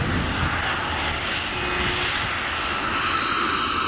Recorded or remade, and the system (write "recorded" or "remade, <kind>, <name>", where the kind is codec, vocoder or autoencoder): recorded